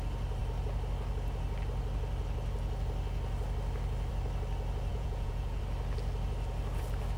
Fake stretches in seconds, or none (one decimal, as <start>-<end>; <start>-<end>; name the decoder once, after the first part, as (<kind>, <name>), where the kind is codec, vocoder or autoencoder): 4.9-5.6 (vocoder, Vocos)